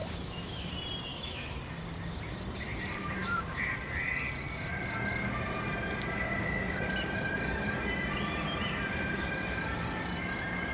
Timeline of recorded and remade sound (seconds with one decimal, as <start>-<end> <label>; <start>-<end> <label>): 0.0-0.7 remade; 0.7-1.1 recorded; 1.1-1.6 remade; 1.6-3.0 recorded; 3.0-3.7 remade; 3.7-10.7 recorded